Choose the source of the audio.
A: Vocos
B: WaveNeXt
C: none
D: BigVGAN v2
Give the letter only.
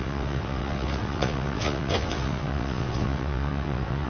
B